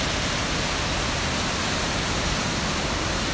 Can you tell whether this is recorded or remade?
recorded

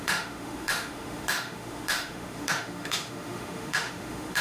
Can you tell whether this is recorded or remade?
remade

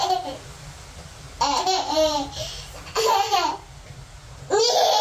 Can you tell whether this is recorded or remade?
recorded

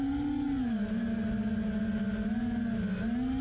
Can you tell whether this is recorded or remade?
recorded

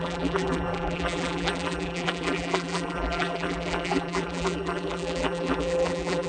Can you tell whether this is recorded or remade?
remade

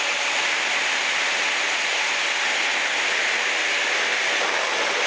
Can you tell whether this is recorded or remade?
recorded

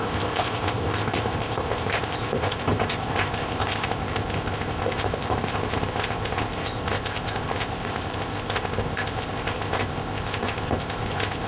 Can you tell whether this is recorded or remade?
remade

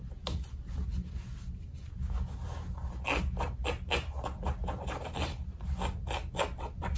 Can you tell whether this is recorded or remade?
recorded